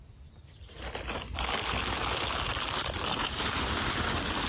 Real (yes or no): yes